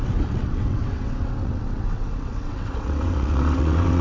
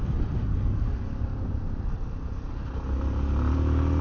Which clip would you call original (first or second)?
second